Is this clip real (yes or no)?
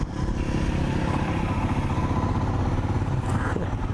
yes